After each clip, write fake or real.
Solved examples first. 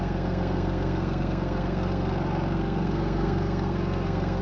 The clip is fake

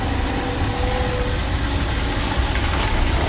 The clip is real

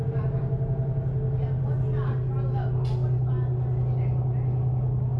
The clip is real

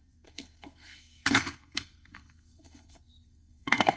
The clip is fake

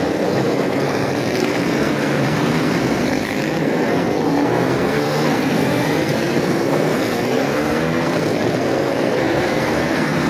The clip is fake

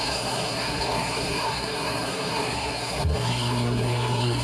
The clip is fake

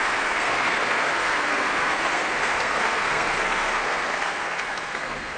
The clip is fake